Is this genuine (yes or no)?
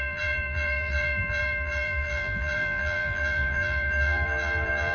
no